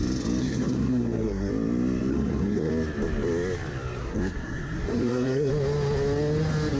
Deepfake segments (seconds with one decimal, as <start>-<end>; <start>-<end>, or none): 0.4-1.5; 2.1-2.7; 4.0-5.5